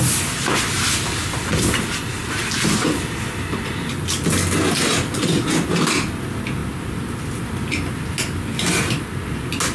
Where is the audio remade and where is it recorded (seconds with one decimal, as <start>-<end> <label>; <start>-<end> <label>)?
0.0-9.7 recorded